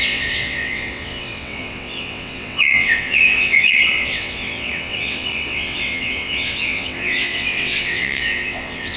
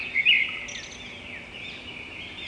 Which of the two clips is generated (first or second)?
first